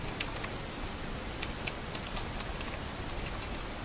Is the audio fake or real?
real